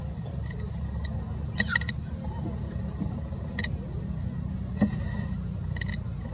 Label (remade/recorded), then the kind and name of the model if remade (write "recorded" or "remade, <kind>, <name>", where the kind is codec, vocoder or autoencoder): recorded